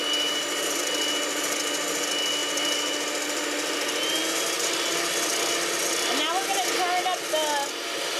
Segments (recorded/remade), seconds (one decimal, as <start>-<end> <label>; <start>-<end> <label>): 0.0-8.2 recorded